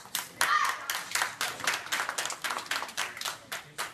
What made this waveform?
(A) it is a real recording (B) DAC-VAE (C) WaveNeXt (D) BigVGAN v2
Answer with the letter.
A